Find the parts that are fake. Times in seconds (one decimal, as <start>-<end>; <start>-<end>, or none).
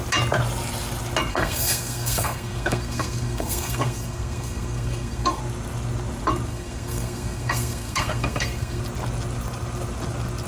1.3-5.4; 6.5-8.8